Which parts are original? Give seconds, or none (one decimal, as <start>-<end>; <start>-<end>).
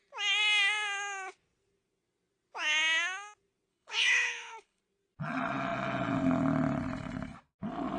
0.0-3.7; 4.8-8.0